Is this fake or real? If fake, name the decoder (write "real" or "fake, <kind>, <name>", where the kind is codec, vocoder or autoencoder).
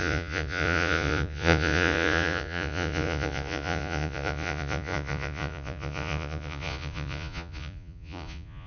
fake, vocoder, Vocos